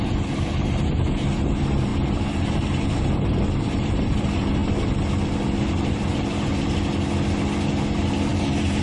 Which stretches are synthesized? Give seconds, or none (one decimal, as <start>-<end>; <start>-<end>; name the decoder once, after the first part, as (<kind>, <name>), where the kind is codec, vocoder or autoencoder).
0.0-4.6 (vocoder, BigVGAN v2); 5.6-6.5; 8.3-8.8

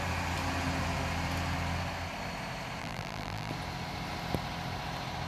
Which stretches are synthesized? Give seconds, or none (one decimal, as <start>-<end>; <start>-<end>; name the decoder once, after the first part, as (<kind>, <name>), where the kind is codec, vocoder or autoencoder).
2.8-3.5 (vocoder, BigVGAN v2)

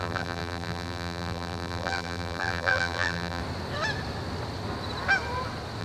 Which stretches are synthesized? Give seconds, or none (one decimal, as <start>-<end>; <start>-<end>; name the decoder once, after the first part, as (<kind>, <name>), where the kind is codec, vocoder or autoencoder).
0.0-3.4 (vocoder, BigVGAN v2)

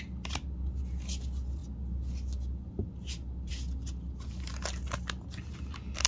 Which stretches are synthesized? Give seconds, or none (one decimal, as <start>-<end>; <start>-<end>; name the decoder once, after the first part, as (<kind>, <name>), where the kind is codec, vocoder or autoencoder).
none

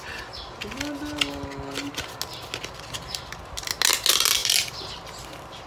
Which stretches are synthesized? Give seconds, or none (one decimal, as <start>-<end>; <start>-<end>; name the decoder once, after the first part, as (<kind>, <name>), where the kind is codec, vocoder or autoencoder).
4.4-5.7 (vocoder, BigVGAN v2)

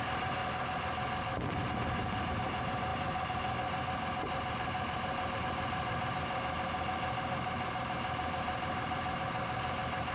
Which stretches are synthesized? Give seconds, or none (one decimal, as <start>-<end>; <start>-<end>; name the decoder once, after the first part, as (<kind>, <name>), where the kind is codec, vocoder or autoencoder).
0.0-0.4 (vocoder, BigVGAN v2); 2.3-10.1